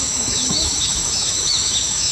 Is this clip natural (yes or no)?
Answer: no